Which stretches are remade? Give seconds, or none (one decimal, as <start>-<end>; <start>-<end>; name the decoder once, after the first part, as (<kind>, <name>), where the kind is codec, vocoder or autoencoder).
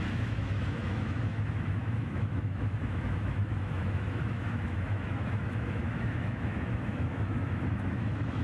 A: 0.0-8.4 (autoencoder, DAC-VAE)